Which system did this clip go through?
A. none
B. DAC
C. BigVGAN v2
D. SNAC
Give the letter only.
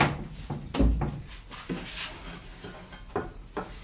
A